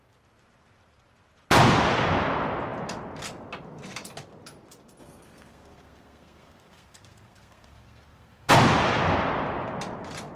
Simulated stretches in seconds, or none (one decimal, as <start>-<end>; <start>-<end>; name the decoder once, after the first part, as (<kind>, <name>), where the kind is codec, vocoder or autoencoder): 5.0-8.5 (codec, SNAC)